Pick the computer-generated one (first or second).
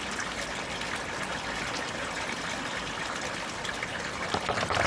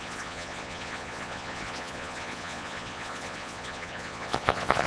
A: second